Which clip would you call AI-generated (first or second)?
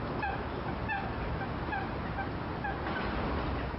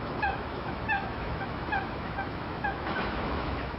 second